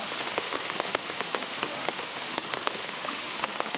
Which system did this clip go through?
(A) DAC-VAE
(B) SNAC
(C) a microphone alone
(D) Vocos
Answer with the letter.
A